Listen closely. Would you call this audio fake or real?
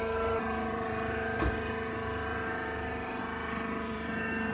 fake